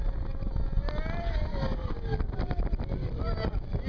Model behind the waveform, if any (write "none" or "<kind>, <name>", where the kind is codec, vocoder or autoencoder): none